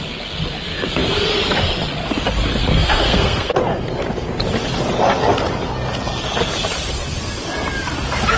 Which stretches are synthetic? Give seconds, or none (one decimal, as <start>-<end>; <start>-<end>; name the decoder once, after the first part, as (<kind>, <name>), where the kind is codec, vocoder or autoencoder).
2.6-3.5 (codec, SNAC)